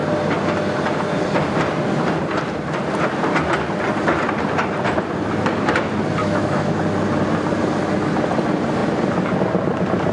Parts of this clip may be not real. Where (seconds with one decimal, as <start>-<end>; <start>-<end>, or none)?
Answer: 6.2-6.8